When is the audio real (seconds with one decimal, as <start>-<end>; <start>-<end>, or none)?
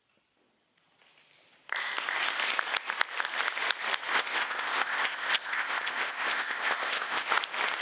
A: 0.0-4.1; 7.3-7.8